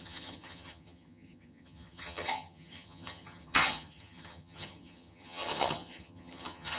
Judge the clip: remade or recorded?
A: remade